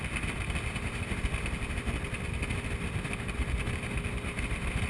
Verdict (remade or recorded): recorded